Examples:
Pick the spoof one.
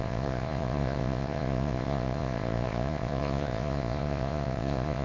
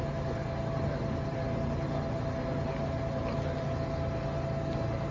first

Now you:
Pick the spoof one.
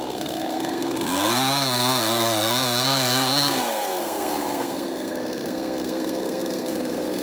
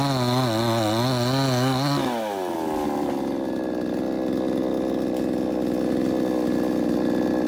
first